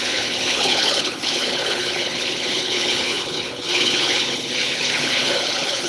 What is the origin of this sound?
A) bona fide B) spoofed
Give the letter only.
B